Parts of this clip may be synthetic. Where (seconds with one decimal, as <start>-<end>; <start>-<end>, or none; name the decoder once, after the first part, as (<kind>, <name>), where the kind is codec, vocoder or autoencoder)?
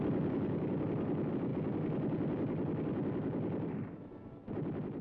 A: none